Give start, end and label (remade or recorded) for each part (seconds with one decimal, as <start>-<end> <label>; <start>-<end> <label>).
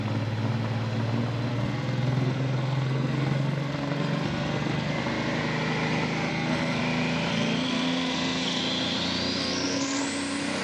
0.0-1.5 recorded; 1.5-4.9 remade; 4.9-6.3 recorded; 6.3-6.8 remade; 6.8-7.3 recorded; 7.3-8.6 remade; 8.6-9.4 recorded; 9.4-10.0 remade; 10.0-10.6 recorded